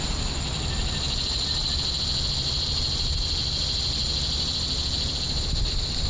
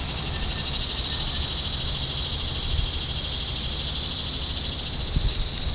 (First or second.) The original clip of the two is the second